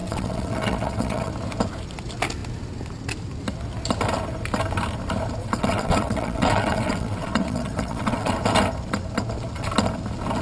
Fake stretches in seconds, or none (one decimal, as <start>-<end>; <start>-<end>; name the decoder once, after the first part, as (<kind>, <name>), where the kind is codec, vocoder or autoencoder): 0.0-1.3 (vocoder, WaveNeXt); 5.4-8.3